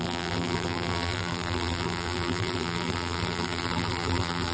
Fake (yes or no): yes